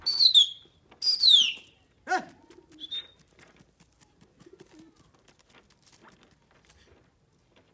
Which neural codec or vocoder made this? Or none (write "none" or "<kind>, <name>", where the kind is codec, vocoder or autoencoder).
none